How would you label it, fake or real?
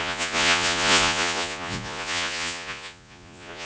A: fake